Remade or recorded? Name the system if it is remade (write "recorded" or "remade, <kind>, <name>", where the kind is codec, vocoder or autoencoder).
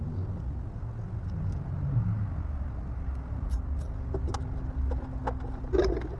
recorded